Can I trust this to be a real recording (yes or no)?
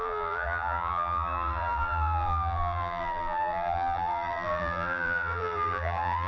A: no